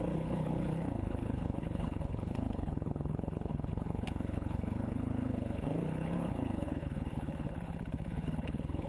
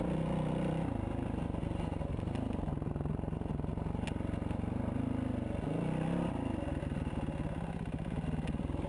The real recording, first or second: second